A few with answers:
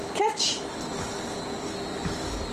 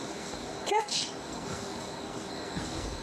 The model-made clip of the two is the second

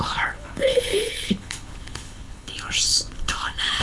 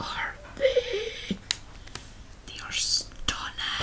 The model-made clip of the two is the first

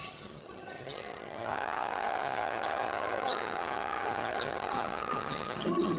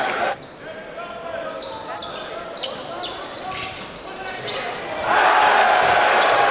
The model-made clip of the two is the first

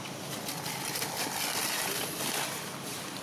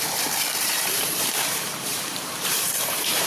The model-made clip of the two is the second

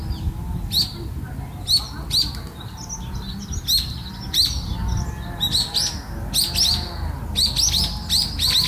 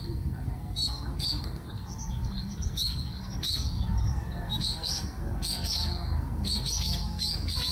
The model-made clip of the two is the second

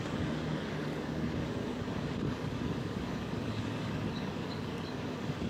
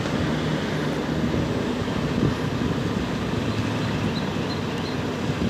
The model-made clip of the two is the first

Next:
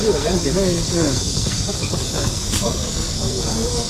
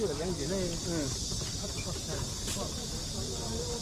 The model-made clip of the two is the first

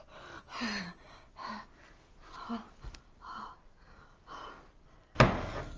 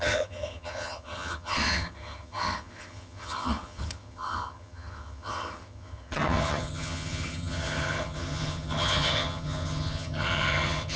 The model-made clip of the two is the second